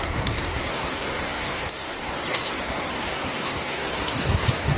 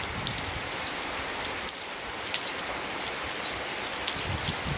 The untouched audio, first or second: second